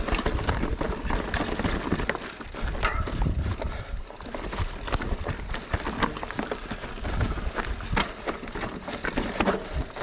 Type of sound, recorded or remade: recorded